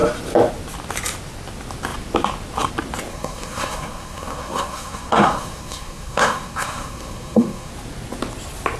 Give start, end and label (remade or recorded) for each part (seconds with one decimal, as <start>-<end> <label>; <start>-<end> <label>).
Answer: 0.0-3.1 recorded; 3.1-7.7 remade; 7.7-8.8 recorded